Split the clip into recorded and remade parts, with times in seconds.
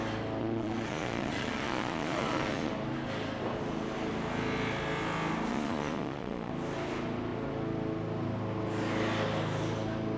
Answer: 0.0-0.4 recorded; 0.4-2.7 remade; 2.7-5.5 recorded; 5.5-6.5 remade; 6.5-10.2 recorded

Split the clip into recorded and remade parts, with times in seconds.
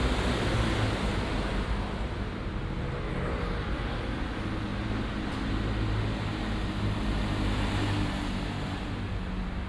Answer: 0.0-9.7 recorded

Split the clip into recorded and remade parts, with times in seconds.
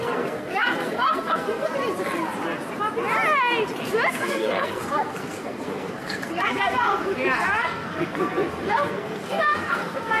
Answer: 0.0-1.7 remade; 1.7-4.1 recorded; 4.1-10.2 remade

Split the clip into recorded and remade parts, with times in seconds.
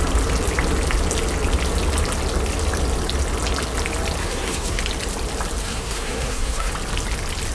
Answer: 0.0-4.2 recorded; 4.2-4.8 remade; 4.8-5.6 recorded; 5.6-6.7 remade; 6.7-7.5 recorded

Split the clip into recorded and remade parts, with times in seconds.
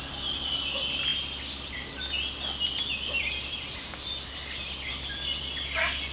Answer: 0.0-6.1 recorded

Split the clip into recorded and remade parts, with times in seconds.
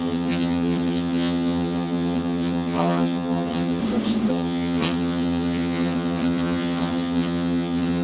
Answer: 0.0-3.8 remade; 3.8-4.3 recorded; 4.3-8.0 remade